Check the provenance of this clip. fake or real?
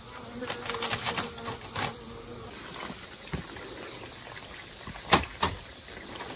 real